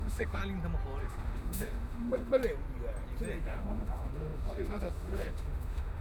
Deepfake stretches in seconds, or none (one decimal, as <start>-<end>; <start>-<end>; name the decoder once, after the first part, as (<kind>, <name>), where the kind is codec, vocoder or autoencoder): 0.0-0.4 (autoencoder, DAC-VAE); 1.0-2.4; 3.4-6.0